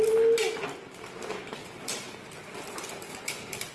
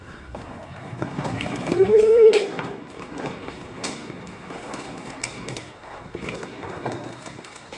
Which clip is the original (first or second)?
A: first